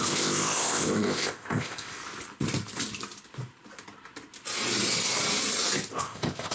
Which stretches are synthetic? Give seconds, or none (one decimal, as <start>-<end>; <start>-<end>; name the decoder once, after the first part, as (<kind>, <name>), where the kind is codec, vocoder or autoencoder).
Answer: 0.0-2.0 (codec, ZipCodec); 5.9-6.5